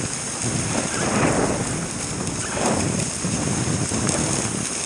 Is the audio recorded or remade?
recorded